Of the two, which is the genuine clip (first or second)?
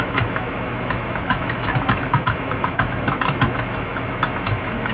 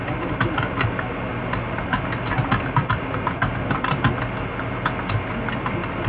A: second